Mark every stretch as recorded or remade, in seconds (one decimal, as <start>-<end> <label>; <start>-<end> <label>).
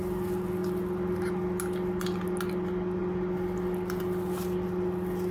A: 0.0-5.3 recorded